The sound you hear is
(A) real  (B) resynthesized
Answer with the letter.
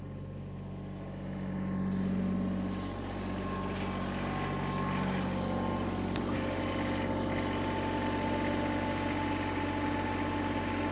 A